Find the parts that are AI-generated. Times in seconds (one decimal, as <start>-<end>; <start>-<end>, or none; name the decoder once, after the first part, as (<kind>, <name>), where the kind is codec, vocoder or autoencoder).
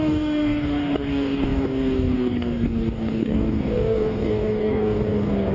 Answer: 0.0-5.5 (codec, DAC)